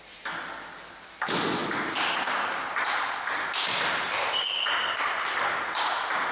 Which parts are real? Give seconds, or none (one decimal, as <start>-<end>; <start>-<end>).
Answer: 0.0-6.3